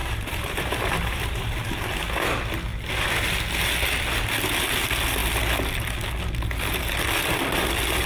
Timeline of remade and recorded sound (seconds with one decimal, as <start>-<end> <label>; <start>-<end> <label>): 0.0-1.5 remade; 1.5-8.1 recorded